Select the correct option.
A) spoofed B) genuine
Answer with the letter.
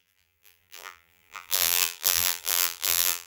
A